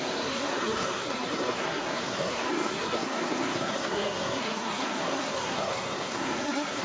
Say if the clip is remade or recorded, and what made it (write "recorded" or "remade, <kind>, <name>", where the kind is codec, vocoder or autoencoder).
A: remade, codec, SNAC